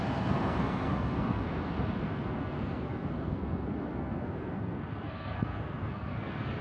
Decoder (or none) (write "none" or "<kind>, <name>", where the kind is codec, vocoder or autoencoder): codec, SNAC